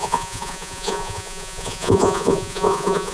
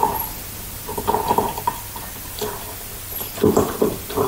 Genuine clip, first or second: second